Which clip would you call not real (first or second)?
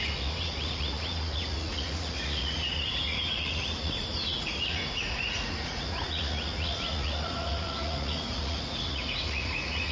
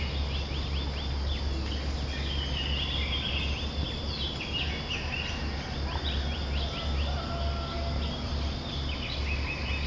first